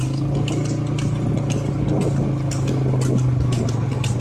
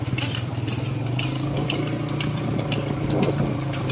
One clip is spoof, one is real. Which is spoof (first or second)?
second